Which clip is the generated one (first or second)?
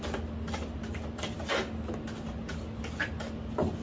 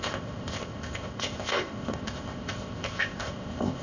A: second